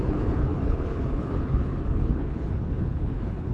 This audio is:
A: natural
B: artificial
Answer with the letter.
B